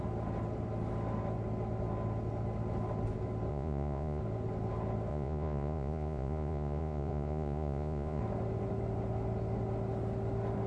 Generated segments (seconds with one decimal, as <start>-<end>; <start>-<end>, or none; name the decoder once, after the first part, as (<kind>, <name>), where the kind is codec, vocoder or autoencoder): 3.5-4.2 (vocoder, Vocos); 5.1-8.2